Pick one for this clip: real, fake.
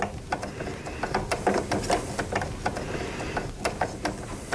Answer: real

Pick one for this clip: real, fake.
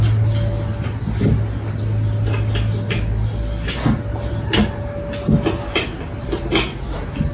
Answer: real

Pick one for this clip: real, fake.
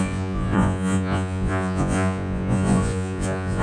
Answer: fake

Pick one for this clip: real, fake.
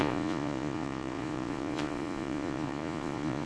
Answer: fake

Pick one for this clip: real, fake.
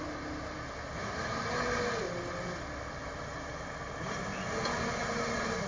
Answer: real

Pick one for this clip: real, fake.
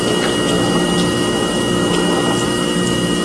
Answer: real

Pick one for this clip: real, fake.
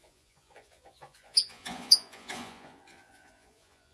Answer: fake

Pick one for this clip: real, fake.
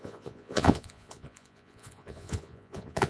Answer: fake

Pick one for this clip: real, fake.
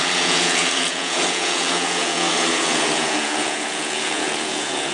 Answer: fake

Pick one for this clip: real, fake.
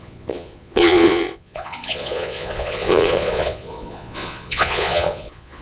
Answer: fake